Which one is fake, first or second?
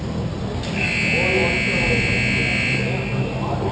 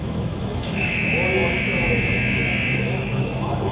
second